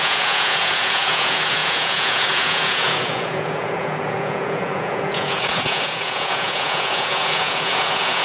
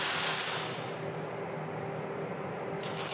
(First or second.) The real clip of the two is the second